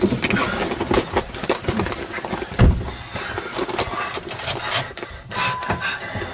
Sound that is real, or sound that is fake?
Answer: real